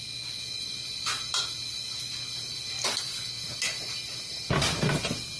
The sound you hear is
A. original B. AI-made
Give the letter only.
A